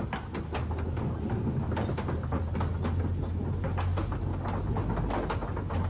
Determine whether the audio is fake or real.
real